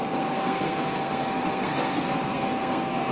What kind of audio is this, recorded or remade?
remade